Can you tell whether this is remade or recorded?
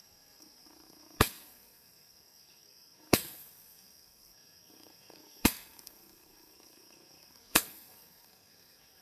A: remade